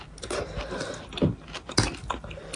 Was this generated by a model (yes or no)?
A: no